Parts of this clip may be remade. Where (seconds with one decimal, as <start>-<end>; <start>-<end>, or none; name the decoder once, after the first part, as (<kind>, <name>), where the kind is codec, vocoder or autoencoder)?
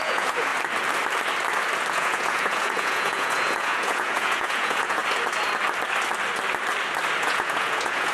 0.0-0.5 (vocoder, Vocos); 1.9-5.0; 7.2-8.1